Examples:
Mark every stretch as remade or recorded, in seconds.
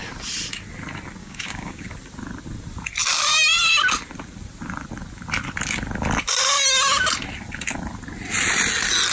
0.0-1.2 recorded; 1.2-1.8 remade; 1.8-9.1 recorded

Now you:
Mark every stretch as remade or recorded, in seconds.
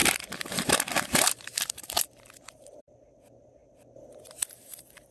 0.0-5.1 remade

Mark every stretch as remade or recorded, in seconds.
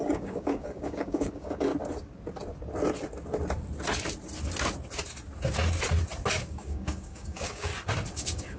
0.0-1.7 remade; 1.7-6.4 recorded; 6.4-7.7 remade; 7.7-8.2 recorded; 8.2-8.6 remade